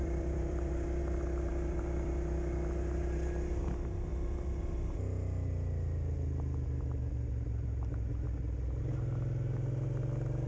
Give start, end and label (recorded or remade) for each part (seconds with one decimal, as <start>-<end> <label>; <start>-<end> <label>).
0.0-1.0 remade; 1.0-1.5 recorded; 1.5-2.1 remade; 2.1-10.5 recorded